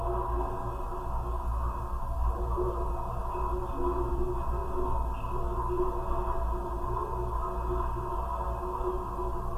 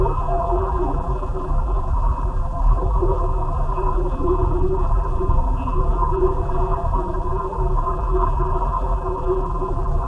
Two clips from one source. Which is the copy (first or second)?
second